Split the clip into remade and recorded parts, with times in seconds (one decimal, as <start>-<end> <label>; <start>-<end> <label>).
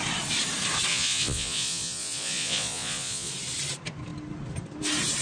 0.0-0.9 recorded; 0.9-3.3 remade; 3.3-5.2 recorded